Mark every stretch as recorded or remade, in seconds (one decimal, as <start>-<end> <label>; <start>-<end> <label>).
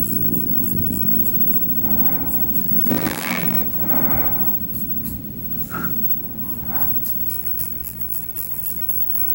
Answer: 0.0-1.2 remade; 1.2-2.6 recorded; 2.6-3.6 remade; 3.6-7.3 recorded; 7.3-9.3 remade